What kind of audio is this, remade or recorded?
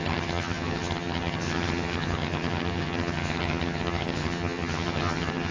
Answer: remade